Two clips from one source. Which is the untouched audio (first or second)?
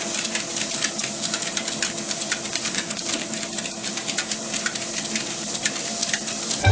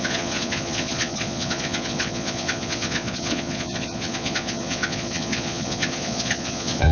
first